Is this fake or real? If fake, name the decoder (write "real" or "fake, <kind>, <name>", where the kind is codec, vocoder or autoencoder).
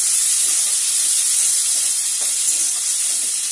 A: real